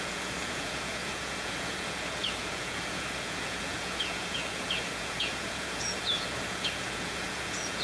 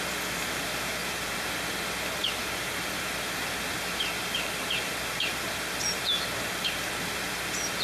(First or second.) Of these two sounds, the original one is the second